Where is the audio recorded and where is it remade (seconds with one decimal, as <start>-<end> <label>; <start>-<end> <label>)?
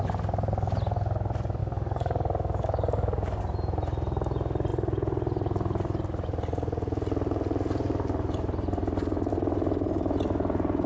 0.0-1.6 recorded; 1.6-3.4 remade; 3.4-10.9 recorded